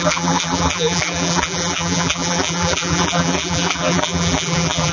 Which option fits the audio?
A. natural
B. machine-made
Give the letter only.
B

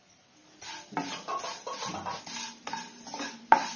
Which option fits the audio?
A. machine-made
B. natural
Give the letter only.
B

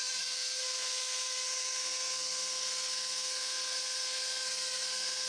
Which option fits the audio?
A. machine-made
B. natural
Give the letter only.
A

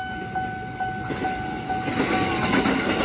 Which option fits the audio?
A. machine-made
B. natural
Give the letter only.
B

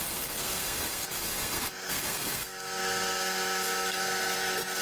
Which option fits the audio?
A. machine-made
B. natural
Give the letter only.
A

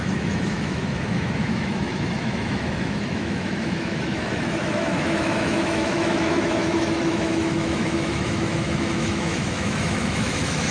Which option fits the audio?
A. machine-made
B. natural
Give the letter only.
A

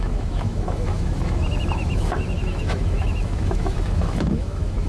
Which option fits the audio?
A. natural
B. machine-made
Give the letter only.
B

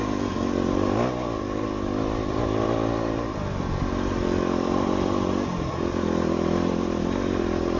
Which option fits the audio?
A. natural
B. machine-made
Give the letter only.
A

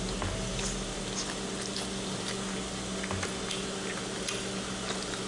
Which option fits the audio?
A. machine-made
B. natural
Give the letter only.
B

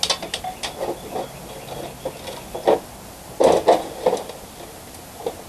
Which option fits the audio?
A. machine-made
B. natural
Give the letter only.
B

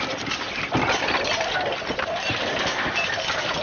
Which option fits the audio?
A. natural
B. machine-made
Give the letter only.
A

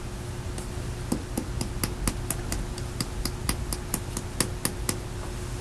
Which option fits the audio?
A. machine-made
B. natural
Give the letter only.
B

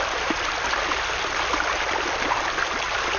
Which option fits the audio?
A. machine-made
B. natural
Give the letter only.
B